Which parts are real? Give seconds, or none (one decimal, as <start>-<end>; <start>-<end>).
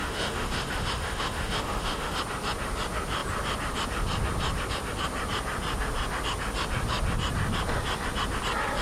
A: 2.2-8.8